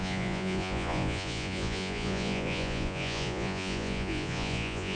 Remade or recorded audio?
remade